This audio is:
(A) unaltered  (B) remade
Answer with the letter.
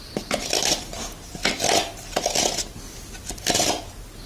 A